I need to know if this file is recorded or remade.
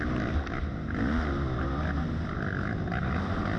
recorded